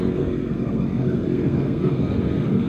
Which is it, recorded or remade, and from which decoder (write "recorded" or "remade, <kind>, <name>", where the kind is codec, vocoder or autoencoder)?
remade, codec, SNAC